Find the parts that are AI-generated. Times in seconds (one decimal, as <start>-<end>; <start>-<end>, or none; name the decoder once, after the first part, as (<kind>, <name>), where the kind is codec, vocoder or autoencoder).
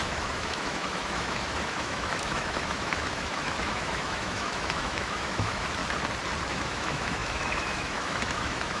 0.0-5.8 (autoencoder, DAC-VAE); 6.5-8.8